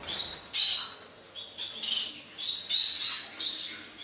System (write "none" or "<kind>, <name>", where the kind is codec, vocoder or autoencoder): none